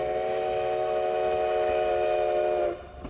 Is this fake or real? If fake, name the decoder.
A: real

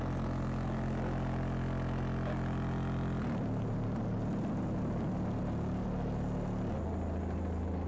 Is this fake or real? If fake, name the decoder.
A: real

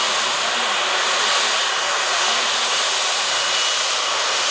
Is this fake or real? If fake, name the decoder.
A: real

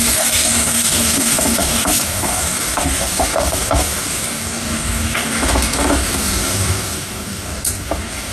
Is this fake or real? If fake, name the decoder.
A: fake, codec, DAC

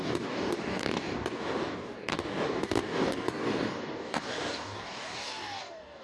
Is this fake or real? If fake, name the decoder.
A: fake, codec, DAC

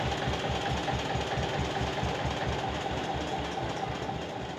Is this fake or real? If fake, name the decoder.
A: real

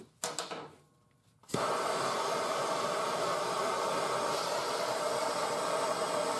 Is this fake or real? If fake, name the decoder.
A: real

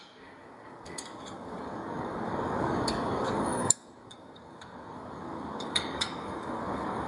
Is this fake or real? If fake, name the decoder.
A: fake, codec, DAC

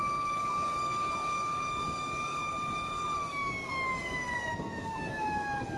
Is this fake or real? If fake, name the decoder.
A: fake, codec, DAC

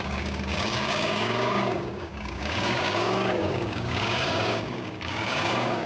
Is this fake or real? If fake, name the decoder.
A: fake, codec, DAC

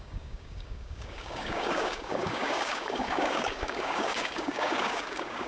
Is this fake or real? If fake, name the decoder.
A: fake, codec, DAC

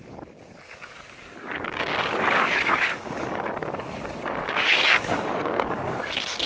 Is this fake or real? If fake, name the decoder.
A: fake, codec, DAC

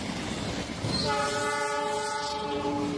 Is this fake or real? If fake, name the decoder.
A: real